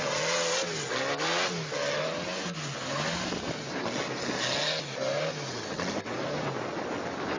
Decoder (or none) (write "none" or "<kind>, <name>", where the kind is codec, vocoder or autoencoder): none